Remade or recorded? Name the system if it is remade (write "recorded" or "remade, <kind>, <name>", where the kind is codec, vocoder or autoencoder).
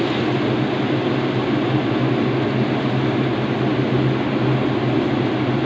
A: recorded